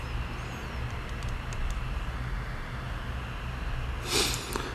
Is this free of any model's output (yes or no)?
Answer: yes